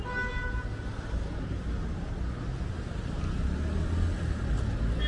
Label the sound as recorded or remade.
recorded